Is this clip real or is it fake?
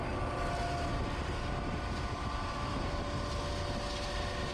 real